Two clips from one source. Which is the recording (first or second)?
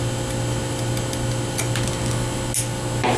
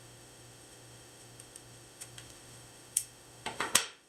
first